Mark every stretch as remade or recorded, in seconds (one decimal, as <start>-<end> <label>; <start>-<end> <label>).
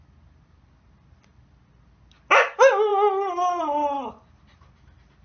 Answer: 0.0-5.2 recorded